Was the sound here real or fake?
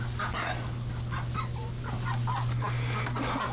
real